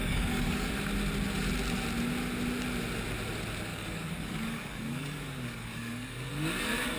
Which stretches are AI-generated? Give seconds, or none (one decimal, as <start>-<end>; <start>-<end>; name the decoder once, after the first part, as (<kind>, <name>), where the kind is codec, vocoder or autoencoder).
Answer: 0.0-0.7 (codec, DAC); 3.7-6.3